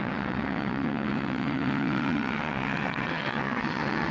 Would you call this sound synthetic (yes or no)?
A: yes